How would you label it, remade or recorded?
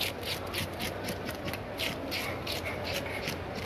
recorded